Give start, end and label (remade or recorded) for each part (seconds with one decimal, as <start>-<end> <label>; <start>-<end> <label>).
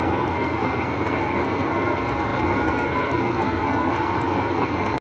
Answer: 0.0-5.0 remade